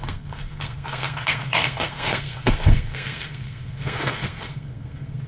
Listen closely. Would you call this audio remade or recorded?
remade